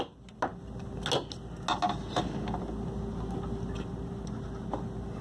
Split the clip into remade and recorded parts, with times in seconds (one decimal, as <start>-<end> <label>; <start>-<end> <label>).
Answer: 0.0-5.2 recorded